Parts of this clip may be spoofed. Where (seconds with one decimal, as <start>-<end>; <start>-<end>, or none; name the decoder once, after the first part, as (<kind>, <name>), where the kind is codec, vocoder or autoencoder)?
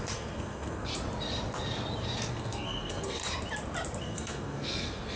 0.0-0.9 (codec, SNAC); 2.3-3.2; 4.0-5.2